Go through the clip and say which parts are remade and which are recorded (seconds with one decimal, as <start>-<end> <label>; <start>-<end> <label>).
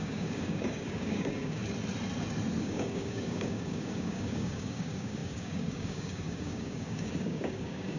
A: 0.0-1.6 remade; 1.6-2.6 recorded; 2.6-8.0 remade